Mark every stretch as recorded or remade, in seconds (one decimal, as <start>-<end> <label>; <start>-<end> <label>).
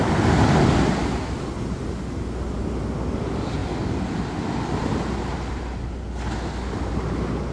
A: 0.0-7.5 recorded